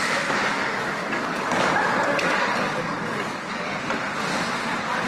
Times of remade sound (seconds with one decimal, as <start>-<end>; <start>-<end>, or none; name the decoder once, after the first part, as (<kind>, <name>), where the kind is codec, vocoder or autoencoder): 0.5-3.6 (codec, DAC)